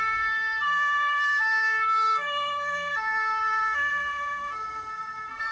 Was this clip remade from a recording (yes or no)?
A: yes